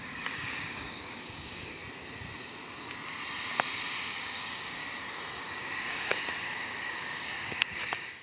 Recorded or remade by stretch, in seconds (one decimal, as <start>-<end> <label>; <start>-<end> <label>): 0.0-1.8 remade; 1.8-4.1 recorded; 4.1-4.8 remade; 4.8-5.4 recorded; 5.4-8.2 remade